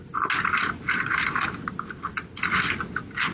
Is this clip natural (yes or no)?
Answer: yes